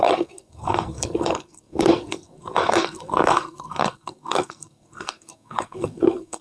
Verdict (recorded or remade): remade